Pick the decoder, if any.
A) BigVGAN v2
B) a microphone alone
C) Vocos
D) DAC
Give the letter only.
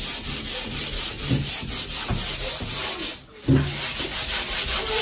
B